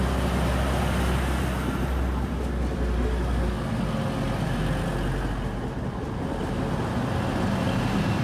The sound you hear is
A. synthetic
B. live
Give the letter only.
B